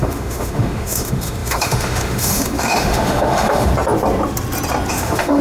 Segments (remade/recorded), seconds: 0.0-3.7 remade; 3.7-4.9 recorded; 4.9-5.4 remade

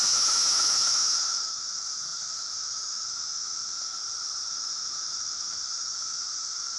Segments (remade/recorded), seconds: 0.0-4.0 remade; 4.0-4.5 recorded; 4.5-6.8 remade

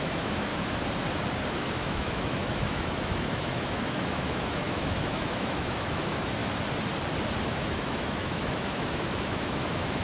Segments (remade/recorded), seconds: 0.0-0.5 remade; 0.5-1.5 recorded; 1.5-6.4 remade; 6.4-7.5 recorded; 7.5-10.0 remade

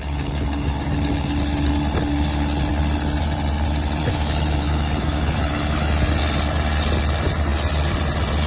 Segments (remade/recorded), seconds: 0.0-4.0 recorded; 4.0-5.9 remade; 5.9-8.5 recorded

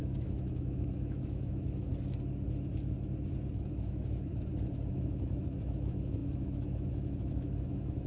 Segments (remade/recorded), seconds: 0.0-1.9 remade; 1.9-3.7 recorded; 3.7-4.3 remade; 4.3-4.9 recorded; 4.9-8.1 remade

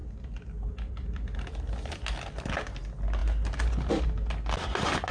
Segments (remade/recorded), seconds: 0.0-5.1 recorded

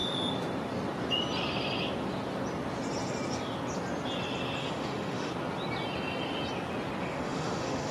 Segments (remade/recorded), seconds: 0.0-4.6 recorded; 4.6-5.3 remade; 5.3-7.0 recorded; 7.0-7.9 remade